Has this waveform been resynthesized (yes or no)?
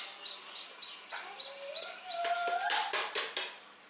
no